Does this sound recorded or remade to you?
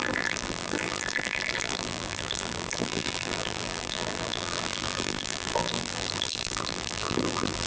remade